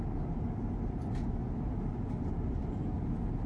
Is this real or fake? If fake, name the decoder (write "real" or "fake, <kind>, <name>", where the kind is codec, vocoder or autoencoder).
real